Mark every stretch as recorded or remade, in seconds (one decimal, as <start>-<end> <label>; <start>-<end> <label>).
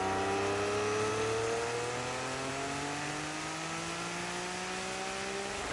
0.0-5.7 recorded